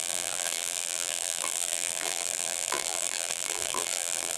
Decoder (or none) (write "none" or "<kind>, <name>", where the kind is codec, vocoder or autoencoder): vocoder, BigVGAN v2